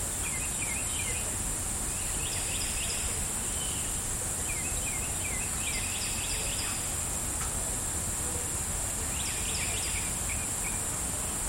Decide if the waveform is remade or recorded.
recorded